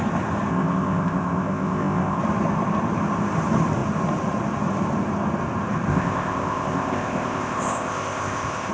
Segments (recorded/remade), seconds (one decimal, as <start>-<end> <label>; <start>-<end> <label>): 0.0-0.5 recorded; 0.5-2.2 remade; 2.2-5.9 recorded; 5.9-8.7 remade